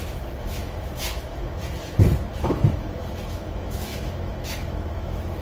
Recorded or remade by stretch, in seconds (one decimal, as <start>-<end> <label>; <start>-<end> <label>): 0.0-1.6 remade; 1.6-2.3 recorded; 2.3-5.4 remade